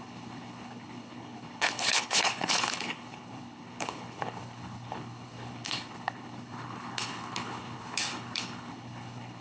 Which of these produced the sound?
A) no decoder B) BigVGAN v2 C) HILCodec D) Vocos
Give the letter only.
C